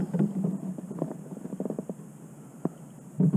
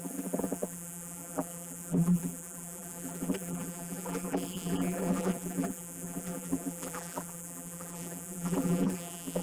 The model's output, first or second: second